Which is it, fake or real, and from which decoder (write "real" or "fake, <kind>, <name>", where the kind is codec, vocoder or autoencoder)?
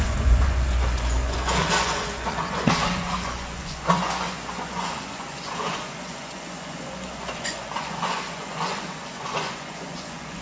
fake, vocoder, Vocos